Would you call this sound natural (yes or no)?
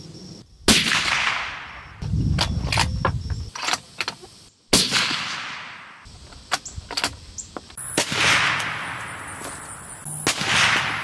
yes